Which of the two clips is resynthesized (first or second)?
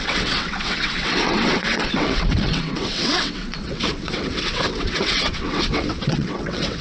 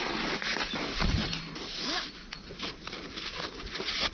first